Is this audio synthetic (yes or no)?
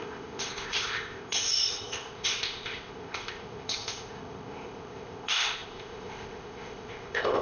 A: yes